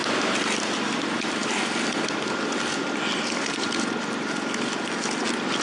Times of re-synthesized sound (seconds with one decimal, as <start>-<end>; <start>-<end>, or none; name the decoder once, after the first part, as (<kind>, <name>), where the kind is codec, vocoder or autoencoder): none